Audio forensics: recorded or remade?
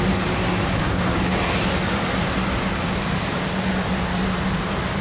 recorded